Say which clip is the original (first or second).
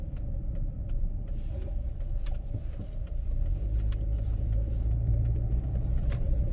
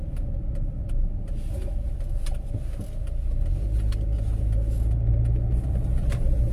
second